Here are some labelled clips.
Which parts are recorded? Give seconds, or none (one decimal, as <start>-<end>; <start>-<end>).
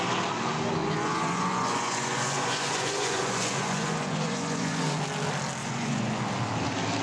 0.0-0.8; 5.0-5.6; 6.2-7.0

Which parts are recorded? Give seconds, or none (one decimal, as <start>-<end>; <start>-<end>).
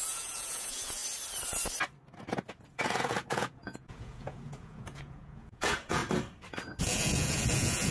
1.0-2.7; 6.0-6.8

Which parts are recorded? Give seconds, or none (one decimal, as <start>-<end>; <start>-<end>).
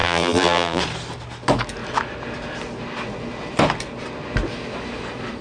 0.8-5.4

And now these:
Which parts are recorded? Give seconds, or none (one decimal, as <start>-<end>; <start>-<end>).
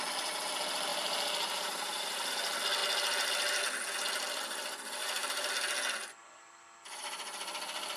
0.0-0.9; 2.3-5.0; 5.5-8.0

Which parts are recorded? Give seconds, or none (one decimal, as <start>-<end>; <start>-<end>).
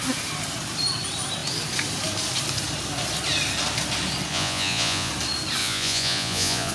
0.0-4.3; 5.1-5.6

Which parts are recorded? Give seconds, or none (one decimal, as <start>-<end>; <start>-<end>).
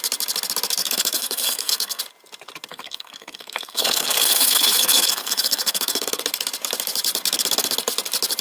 0.0-0.8; 2.0-2.7; 6.2-8.4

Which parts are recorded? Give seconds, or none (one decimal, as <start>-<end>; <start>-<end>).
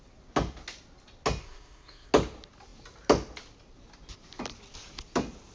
0.0-1.4; 2.1-5.5